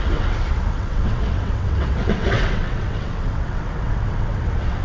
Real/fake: fake